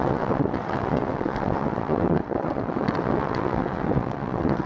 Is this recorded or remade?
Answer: remade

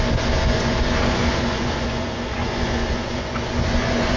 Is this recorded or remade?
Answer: remade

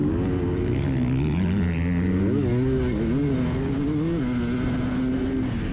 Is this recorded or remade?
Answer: recorded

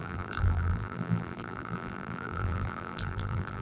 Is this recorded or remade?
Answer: remade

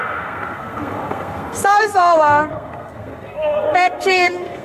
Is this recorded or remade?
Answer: remade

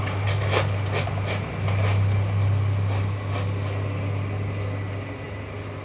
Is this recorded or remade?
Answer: recorded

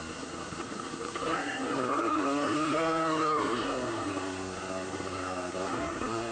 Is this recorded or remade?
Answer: remade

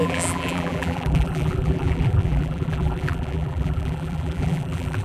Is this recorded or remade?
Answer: remade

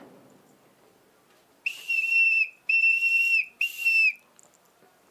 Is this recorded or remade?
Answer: recorded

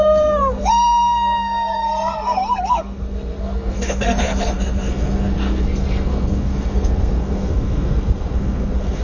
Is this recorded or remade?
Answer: remade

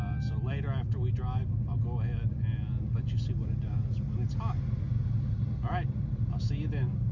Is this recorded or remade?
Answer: recorded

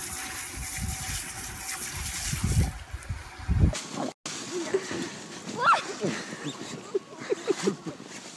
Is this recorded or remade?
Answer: recorded